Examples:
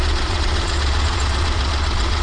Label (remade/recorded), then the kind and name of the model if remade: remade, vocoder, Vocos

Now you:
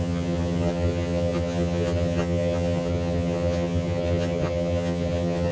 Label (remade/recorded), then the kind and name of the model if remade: remade, vocoder, HiFi-GAN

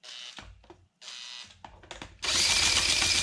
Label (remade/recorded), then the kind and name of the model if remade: recorded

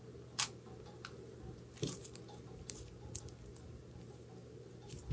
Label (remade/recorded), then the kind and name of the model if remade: recorded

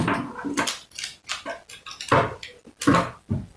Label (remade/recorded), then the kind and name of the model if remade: recorded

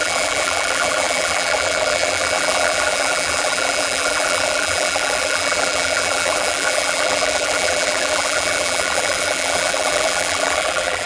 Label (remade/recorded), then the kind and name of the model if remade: remade, vocoder, BigVGAN v2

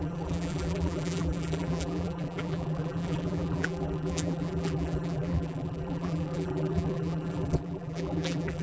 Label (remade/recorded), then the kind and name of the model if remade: remade, vocoder, BigVGAN v2